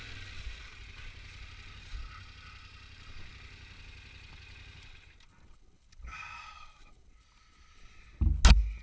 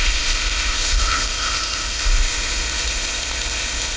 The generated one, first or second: second